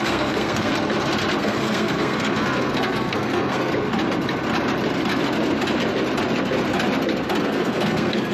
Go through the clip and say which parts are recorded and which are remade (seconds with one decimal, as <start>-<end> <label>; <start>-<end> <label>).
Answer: 0.0-0.7 remade; 0.7-1.4 recorded; 1.4-3.7 remade; 3.7-7.4 recorded; 7.4-8.3 remade